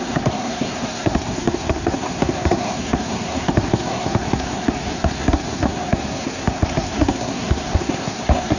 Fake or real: fake